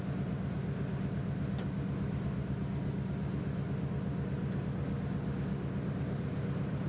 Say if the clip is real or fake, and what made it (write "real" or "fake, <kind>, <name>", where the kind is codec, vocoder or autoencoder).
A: real